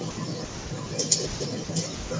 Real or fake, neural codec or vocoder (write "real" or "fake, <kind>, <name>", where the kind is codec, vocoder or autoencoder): real